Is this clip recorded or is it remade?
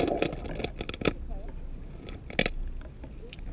recorded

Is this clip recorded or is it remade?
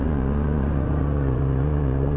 remade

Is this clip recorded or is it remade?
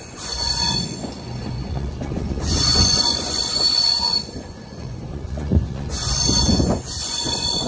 remade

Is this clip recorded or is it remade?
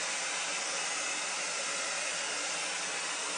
recorded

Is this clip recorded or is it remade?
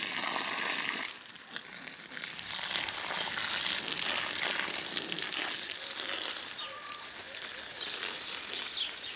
recorded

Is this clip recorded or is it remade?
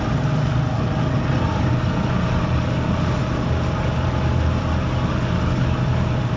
recorded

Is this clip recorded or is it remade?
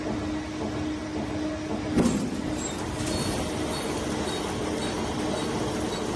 recorded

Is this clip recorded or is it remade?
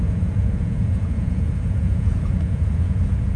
remade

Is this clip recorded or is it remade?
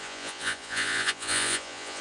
remade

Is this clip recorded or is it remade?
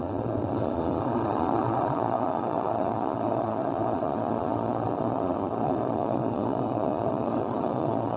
remade